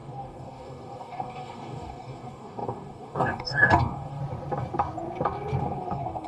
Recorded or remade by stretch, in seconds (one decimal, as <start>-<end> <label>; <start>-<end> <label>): 0.0-4.2 remade; 4.2-5.6 recorded; 5.6-6.3 remade